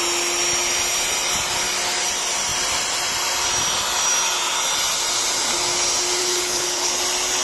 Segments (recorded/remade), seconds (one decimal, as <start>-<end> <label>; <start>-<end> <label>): 0.0-6.2 recorded; 6.2-6.9 remade; 6.9-7.4 recorded